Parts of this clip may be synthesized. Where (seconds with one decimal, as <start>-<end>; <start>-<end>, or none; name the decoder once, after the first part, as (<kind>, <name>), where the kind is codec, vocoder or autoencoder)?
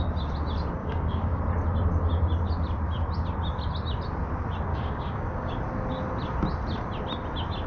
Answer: 0.8-1.4 (codec, DAC); 4.7-5.5